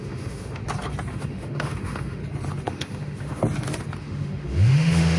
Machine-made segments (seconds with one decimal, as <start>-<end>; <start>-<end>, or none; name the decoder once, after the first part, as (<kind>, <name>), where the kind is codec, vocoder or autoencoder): 0.0-0.6 (autoencoder, DAC-VAE); 1.1-2.2; 2.7-3.4; 4.0-5.2